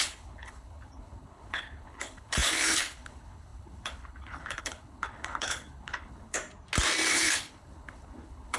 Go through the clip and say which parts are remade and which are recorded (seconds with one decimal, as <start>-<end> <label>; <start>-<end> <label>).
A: 0.0-6.4 remade; 6.4-7.1 recorded; 7.1-8.6 remade